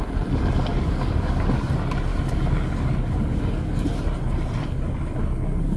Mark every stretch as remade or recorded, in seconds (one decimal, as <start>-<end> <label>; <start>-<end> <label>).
0.0-0.7 recorded; 0.7-1.7 remade; 1.7-2.1 recorded; 2.1-4.0 remade; 4.0-4.6 recorded; 4.6-5.8 remade